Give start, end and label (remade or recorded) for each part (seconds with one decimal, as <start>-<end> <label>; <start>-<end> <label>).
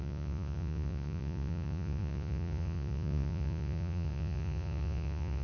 0.0-5.4 remade